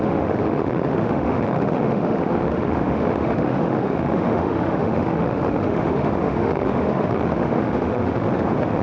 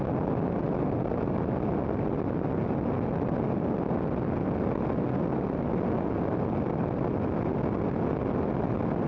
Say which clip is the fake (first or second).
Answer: first